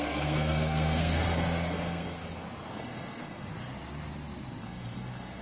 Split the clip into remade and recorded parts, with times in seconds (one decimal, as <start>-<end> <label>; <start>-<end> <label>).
0.0-2.2 remade; 2.2-2.7 recorded; 2.7-3.5 remade; 3.5-4.6 recorded; 4.6-5.4 remade